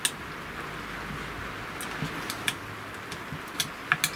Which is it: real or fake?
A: real